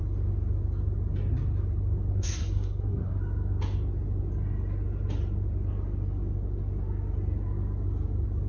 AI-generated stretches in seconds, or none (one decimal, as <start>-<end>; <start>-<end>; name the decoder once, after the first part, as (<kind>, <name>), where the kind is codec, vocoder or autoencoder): 2.1-3.2 (codec, SNAC)